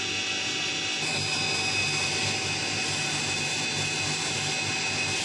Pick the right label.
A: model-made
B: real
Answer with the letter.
B